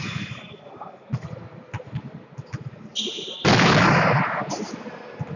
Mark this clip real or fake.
real